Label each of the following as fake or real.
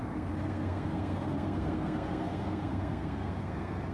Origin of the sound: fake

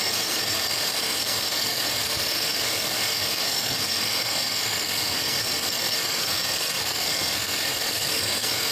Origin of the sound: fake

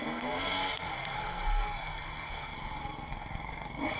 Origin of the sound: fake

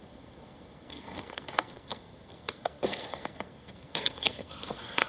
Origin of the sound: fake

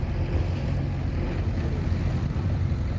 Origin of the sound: real